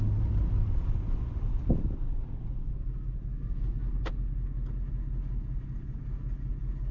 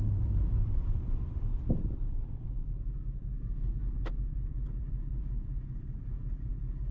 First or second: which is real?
first